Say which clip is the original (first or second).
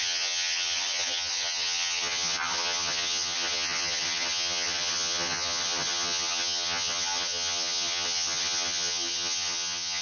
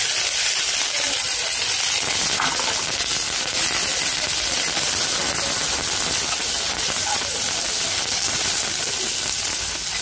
second